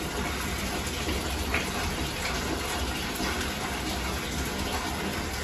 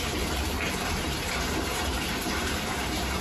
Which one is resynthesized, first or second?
second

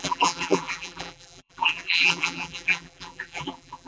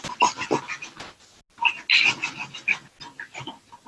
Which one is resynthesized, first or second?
first